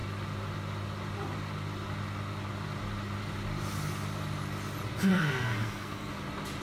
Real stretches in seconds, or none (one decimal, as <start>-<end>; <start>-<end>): 0.0-5.1; 6.1-6.6